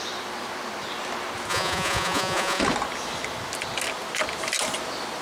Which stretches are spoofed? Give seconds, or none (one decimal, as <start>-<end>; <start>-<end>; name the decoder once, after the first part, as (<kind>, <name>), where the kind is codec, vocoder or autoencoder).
1.5-2.6 (vocoder, Vocos)